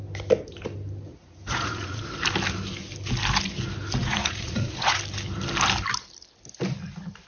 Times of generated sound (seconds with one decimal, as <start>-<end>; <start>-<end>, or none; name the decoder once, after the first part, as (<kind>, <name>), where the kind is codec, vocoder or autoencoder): 1.1-2.0 (vocoder, Vocos); 4.0-5.0